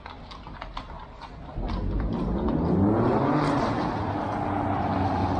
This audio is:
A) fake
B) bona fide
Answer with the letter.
B